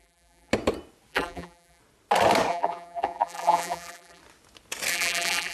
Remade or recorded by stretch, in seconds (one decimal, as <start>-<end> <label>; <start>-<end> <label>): 0.0-0.5 remade; 0.5-1.1 recorded; 1.1-1.8 remade; 1.8-2.5 recorded; 2.5-4.2 remade; 4.2-4.9 recorded; 4.9-5.5 remade